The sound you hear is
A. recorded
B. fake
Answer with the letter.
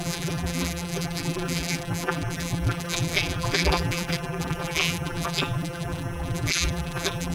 B